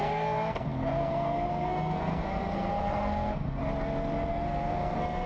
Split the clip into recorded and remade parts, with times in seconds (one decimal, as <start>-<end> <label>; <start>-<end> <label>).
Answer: 0.0-3.6 remade; 3.6-4.3 recorded; 4.3-5.3 remade